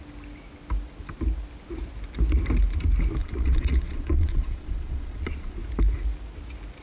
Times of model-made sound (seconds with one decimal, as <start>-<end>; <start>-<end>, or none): 3.2-5.6